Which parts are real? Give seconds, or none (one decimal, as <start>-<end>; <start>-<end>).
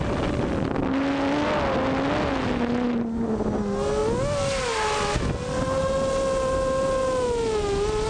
0.0-8.1